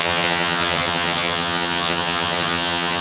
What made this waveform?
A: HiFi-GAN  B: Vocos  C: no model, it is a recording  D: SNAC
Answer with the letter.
A